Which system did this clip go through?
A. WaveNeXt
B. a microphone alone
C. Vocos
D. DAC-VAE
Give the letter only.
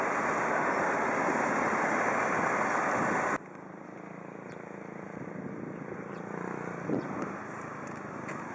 B